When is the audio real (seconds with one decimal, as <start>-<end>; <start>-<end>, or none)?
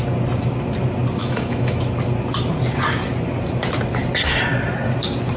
0.0-1.2; 1.8-5.4